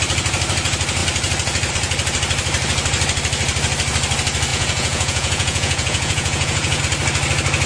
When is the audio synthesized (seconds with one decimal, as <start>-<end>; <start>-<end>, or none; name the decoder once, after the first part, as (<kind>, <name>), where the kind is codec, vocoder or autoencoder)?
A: 4.5-6.8 (vocoder, Vocos)